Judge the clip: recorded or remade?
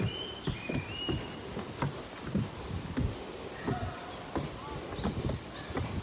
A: recorded